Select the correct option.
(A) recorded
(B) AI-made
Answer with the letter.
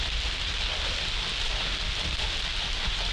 A